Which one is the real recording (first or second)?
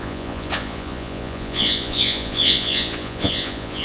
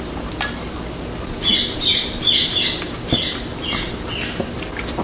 second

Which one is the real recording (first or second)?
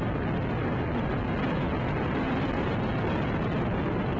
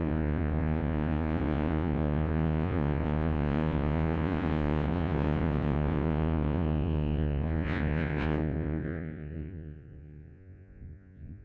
first